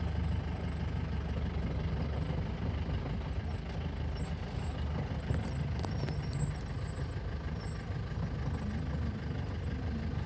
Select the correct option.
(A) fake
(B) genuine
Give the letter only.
B